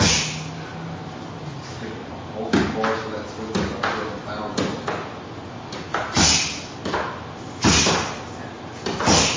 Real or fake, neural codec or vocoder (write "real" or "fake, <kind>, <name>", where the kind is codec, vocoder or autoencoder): real